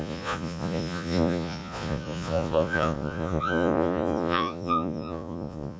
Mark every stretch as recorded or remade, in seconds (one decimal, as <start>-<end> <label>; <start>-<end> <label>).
0.0-5.8 remade

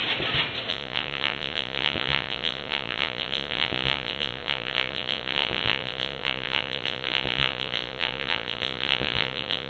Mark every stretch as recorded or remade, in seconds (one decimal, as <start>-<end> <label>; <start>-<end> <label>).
0.0-0.7 recorded; 0.7-9.7 remade

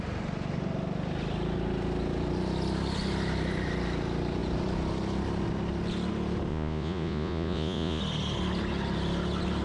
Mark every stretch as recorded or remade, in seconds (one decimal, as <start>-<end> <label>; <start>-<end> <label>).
0.0-6.5 recorded; 6.5-8.0 remade; 8.0-9.6 recorded

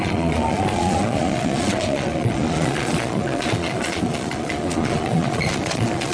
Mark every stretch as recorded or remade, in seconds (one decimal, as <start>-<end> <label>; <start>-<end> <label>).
0.0-6.1 remade

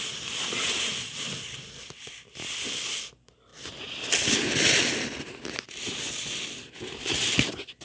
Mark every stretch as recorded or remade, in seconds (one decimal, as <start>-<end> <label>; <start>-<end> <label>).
0.0-7.8 recorded